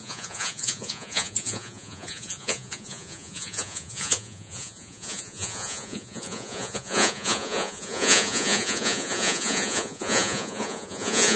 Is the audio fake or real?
fake